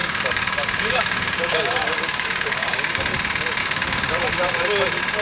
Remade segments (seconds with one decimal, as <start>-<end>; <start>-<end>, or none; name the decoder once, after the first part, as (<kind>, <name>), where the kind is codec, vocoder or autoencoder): 0.0-3.1 (codec, DAC); 3.6-4.2